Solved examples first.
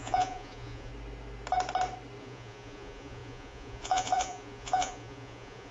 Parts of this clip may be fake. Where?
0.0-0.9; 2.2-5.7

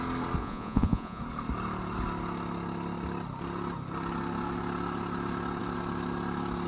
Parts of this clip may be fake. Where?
0.4-1.2